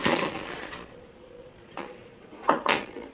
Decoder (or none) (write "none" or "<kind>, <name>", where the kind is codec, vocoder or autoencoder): vocoder, Vocos